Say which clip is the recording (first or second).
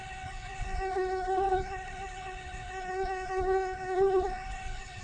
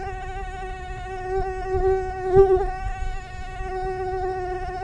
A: second